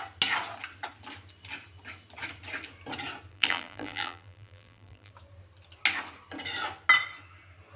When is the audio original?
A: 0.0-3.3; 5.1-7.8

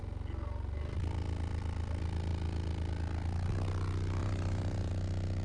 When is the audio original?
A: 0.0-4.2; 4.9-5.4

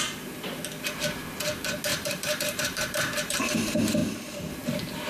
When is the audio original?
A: 0.0-1.9; 3.4-4.0; 4.5-5.1